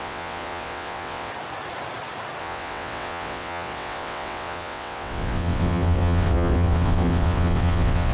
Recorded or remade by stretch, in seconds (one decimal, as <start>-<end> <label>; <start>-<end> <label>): 0.0-1.3 remade; 1.3-2.4 recorded; 2.4-8.1 remade